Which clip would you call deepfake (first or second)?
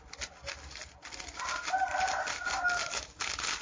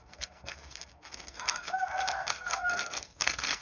second